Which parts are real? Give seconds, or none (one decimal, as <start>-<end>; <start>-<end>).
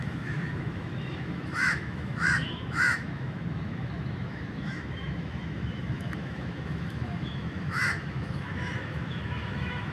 none